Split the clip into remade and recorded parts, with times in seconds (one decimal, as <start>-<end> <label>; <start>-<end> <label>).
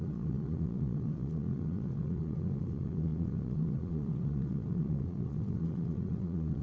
0.0-6.6 remade